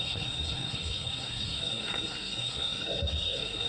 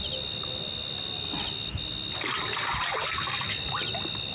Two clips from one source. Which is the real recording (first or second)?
second